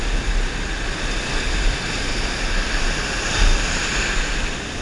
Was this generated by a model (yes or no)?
no